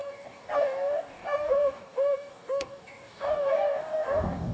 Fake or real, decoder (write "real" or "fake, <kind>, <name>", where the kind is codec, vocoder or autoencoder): fake, codec, DAC